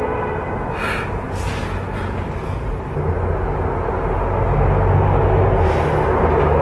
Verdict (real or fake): real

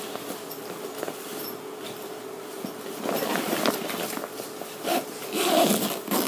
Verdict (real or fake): real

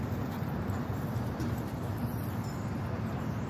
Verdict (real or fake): real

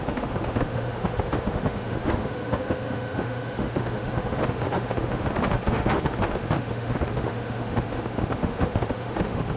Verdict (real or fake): fake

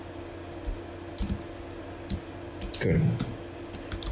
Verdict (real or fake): real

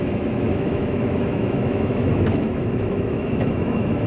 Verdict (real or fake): fake